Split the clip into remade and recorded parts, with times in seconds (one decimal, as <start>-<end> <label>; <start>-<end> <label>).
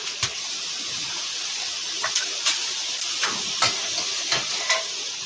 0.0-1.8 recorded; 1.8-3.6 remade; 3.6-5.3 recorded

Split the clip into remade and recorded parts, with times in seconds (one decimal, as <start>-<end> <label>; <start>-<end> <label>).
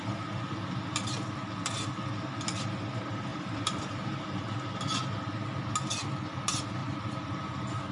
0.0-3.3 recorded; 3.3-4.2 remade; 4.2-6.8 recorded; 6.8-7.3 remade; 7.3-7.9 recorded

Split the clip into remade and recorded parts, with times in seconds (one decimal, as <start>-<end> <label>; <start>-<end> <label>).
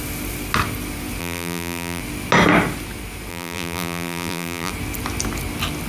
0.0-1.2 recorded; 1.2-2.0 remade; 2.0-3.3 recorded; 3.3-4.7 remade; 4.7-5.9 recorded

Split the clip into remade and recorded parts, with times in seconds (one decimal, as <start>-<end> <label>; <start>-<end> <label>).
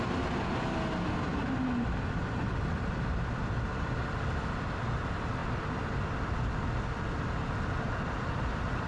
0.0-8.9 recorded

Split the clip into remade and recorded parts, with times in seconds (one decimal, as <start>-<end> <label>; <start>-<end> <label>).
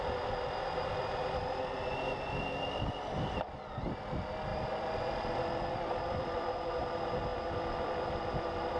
0.0-4.5 recorded; 4.5-6.7 remade; 6.7-7.3 recorded; 7.3-8.8 remade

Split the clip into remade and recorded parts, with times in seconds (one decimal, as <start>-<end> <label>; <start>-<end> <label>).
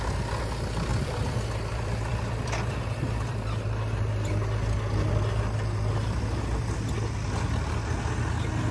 0.0-0.9 recorded; 0.9-4.1 remade; 4.1-8.7 recorded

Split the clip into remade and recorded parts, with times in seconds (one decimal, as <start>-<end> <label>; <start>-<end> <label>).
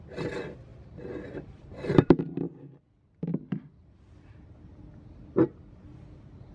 0.0-0.7 recorded; 0.7-2.2 remade; 2.2-3.8 recorded; 3.8-6.5 remade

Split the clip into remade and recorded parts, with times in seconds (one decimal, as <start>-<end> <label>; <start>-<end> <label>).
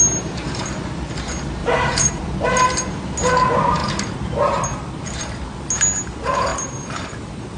0.0-1.6 recorded; 1.6-2.2 remade; 2.2-6.5 recorded; 6.5-7.6 remade